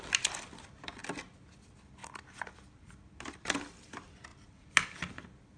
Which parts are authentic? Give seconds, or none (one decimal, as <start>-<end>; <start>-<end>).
1.0-1.6; 4.3-5.1